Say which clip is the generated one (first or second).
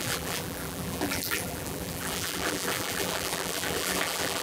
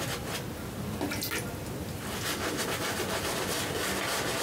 first